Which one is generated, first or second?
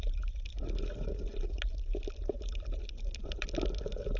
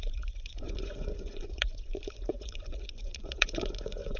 second